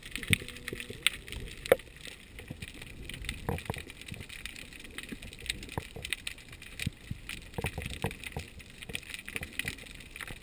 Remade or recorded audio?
recorded